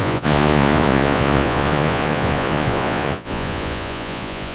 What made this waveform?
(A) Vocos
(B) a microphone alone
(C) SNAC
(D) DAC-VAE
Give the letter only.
A